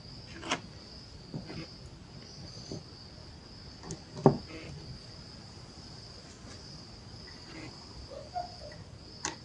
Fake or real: real